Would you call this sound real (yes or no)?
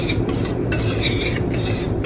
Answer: no